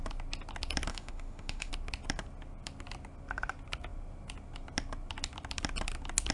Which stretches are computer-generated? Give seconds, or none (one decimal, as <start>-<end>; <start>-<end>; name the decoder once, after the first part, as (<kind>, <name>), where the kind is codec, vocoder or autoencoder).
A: 0.9-1.7 (autoencoder, DAC-VAE)